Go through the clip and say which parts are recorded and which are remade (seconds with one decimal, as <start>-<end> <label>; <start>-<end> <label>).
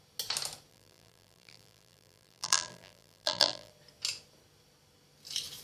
0.0-0.7 recorded; 0.7-3.7 remade; 3.7-5.6 recorded